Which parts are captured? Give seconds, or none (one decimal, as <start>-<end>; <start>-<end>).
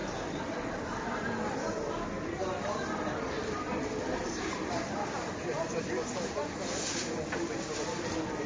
0.0-8.5